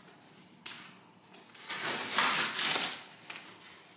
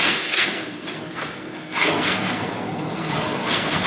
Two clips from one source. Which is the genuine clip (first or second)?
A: first